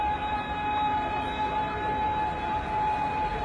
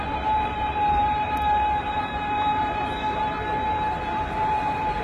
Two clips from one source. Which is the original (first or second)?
first